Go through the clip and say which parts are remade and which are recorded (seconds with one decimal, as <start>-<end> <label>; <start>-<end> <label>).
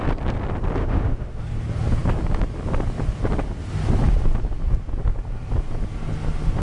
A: 0.0-0.8 recorded; 0.8-1.4 remade; 1.4-6.6 recorded